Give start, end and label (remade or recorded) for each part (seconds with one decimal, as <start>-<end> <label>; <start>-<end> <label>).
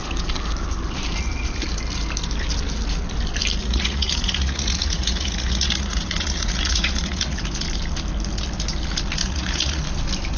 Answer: 0.0-3.6 recorded; 3.6-7.4 remade; 7.4-9.2 recorded; 9.2-9.8 remade; 9.8-10.4 recorded